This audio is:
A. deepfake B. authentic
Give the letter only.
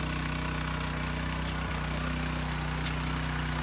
B